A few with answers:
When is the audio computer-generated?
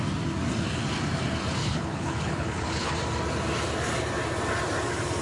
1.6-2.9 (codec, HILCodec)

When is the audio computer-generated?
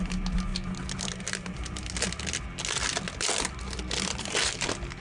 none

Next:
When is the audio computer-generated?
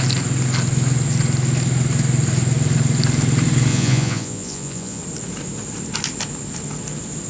3.7-5.0 (vocoder, Vocos)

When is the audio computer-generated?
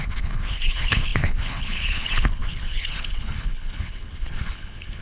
0.0-5.0 (codec, HILCodec)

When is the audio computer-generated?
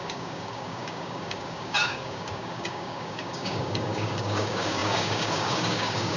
0.0-6.2 (codec, DAC)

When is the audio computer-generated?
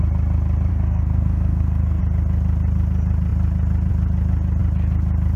0.7-2.0 (codec, SNAC)